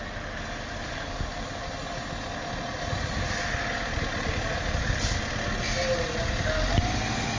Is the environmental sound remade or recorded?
recorded